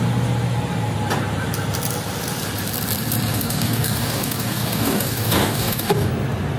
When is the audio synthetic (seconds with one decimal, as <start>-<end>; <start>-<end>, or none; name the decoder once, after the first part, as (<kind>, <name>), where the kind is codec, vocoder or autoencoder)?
3.3-6.1 (codec, DAC)